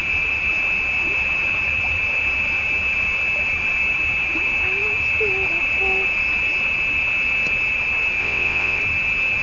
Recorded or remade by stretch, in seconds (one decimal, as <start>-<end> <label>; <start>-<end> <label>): 0.0-8.2 recorded; 8.2-8.8 remade; 8.8-9.4 recorded